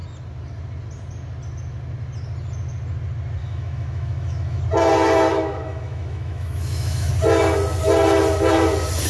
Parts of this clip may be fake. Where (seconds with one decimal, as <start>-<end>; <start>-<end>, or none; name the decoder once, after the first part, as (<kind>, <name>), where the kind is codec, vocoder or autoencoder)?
3.4-4.6 (autoencoder, DAC-VAE); 5.3-7.1